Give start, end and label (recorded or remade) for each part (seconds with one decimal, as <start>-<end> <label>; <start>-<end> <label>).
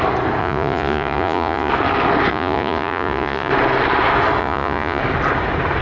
0.0-0.4 recorded; 0.4-1.7 remade; 1.7-2.3 recorded; 2.3-3.5 remade; 3.5-4.4 recorded; 4.4-5.0 remade; 5.0-5.8 recorded